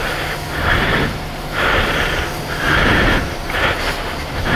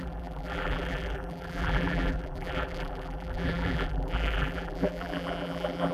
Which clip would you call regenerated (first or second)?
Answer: second